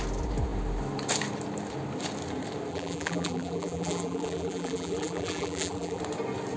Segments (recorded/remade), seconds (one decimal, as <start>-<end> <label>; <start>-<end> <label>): 0.0-2.7 recorded; 2.7-6.0 remade; 6.0-6.6 recorded